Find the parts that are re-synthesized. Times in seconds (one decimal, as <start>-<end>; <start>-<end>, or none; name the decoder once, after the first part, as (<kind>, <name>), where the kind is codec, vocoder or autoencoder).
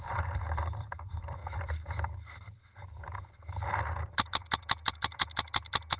0.0-6.0 (vocoder, BigVGAN v2)